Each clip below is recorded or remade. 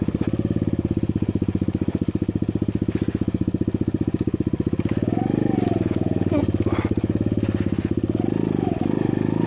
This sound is recorded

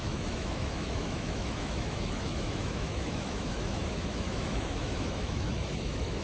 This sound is remade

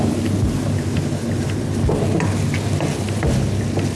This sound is recorded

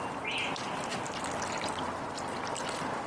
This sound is recorded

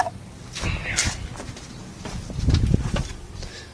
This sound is recorded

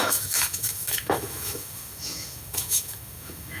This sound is remade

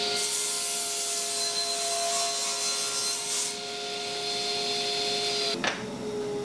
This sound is recorded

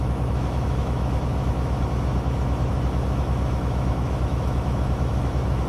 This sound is remade